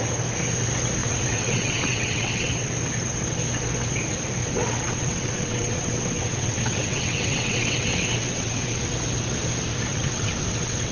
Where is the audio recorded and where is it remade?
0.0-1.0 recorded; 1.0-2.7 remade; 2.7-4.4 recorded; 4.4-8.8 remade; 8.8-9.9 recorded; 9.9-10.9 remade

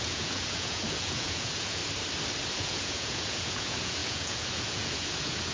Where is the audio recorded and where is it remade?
0.0-1.8 remade; 1.8-2.5 recorded; 2.5-5.5 remade

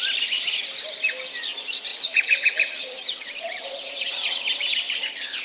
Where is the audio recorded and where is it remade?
0.0-1.9 recorded; 1.9-4.4 remade; 4.4-5.4 recorded

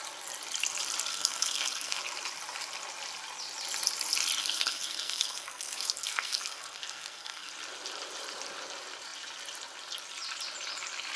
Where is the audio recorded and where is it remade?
0.0-1.1 recorded; 1.1-2.0 remade; 2.0-4.4 recorded; 4.4-7.5 remade; 7.5-11.2 recorded

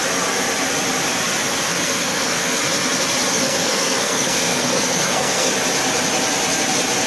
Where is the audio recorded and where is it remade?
0.0-1.7 recorded; 1.7-2.6 remade; 2.6-3.3 recorded; 3.3-5.5 remade; 5.5-7.1 recorded